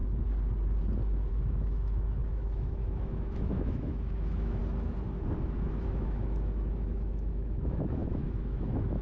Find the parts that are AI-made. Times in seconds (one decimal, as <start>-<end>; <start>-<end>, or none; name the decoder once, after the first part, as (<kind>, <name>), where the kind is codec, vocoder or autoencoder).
1.3-4.6 (autoencoder, DAC-VAE); 5.8-9.0